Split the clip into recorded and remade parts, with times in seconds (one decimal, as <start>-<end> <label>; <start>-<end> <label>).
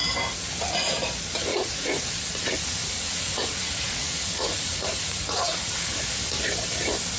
0.0-1.5 recorded; 1.5-2.1 remade; 2.1-2.8 recorded; 2.8-6.0 remade; 6.0-7.2 recorded